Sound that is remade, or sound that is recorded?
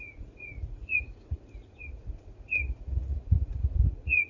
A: remade